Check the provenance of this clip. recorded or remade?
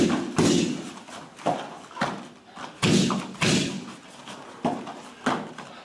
recorded